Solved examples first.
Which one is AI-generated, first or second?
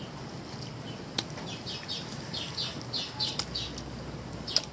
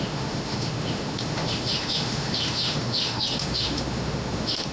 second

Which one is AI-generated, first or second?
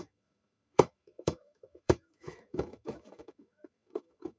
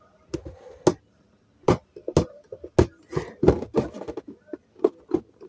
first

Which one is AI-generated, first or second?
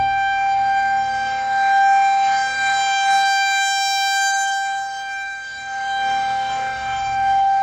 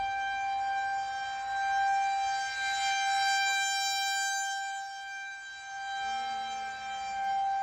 first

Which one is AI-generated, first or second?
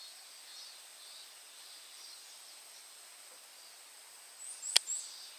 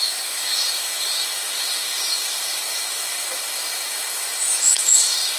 second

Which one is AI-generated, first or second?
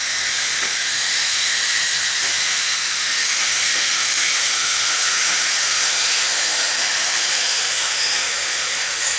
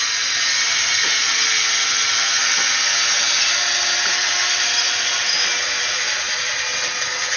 first